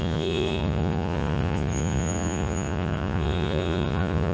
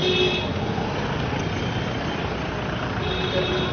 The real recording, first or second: second